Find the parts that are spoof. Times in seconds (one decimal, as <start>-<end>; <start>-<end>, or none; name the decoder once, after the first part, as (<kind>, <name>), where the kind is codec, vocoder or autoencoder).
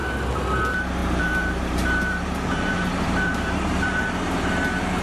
1.0-4.0 (vocoder, BigVGAN v2)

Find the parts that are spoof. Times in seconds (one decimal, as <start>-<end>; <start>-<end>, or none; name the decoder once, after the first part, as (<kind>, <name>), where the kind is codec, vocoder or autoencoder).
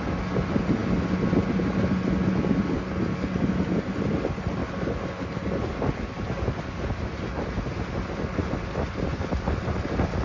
none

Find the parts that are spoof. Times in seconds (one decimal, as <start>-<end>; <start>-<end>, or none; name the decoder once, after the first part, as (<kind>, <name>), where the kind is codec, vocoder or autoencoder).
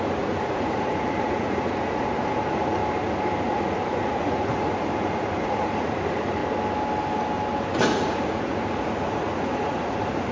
0.0-2.8 (vocoder, Vocos); 3.5-6.4; 7.6-10.3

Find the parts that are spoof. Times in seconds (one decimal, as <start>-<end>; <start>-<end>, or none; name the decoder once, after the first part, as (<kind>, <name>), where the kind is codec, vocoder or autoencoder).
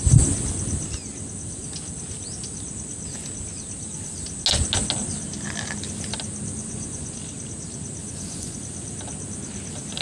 6.6-7.1 (vocoder, Vocos); 8.0-8.6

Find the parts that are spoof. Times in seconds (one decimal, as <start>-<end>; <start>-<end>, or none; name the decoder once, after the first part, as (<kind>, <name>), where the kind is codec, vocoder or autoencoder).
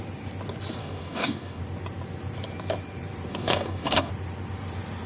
0.8-1.6 (codec, DAC); 3.3-4.1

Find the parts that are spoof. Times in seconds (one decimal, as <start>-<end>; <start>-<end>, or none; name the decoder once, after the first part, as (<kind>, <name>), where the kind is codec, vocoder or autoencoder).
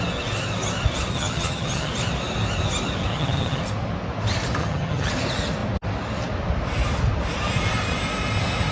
1.1-1.9 (vocoder, HiFi-GAN); 3.1-3.6; 4.6-5.1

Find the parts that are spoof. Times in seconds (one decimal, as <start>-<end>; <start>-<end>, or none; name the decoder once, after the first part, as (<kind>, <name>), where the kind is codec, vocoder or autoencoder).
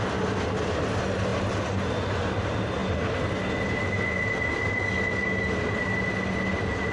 none